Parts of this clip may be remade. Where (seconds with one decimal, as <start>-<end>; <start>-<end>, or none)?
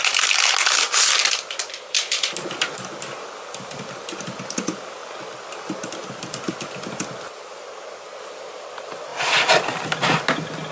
none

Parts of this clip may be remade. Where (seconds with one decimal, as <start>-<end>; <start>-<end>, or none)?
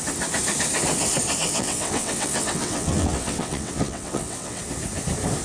1.4-4.6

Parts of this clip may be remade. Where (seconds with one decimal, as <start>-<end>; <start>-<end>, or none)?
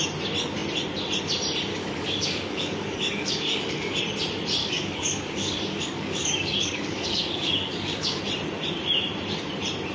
1.7-4.0; 4.6-8.2